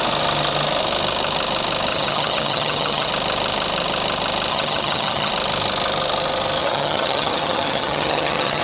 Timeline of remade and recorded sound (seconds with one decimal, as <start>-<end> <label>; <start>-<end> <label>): 0.0-1.9 recorded; 1.9-3.1 remade; 3.1-4.5 recorded; 4.5-5.3 remade; 5.3-6.6 recorded; 6.6-8.6 remade